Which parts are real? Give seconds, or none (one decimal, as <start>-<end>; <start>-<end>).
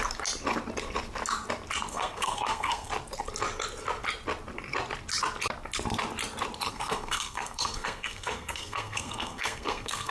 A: 0.0-1.9; 2.9-6.7